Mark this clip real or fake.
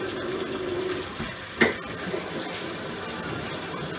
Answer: real